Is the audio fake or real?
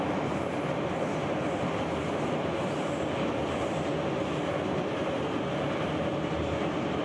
real